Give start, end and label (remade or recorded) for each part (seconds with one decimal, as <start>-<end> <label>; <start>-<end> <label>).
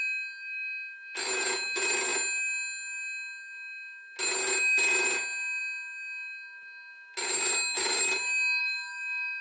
0.0-8.6 recorded; 8.6-9.4 remade